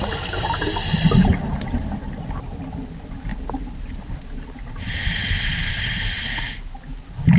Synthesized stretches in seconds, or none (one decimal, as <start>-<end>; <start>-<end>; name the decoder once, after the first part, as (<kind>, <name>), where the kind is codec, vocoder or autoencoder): none